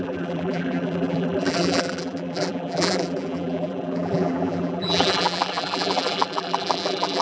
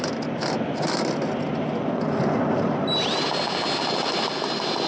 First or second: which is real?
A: second